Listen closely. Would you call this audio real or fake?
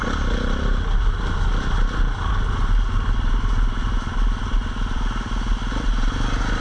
real